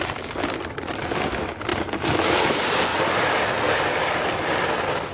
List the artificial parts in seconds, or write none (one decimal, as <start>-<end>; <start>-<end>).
none